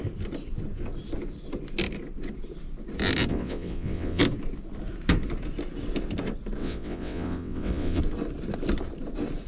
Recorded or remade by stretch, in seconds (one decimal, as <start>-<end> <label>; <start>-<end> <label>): 0.0-3.3 recorded; 3.3-4.2 remade; 4.2-6.6 recorded; 6.6-8.0 remade; 8.0-9.5 recorded